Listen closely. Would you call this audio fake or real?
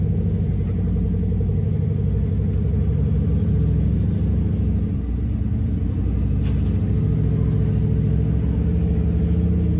real